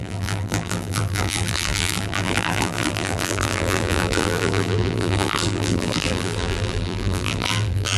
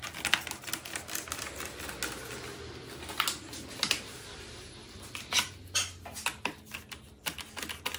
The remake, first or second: first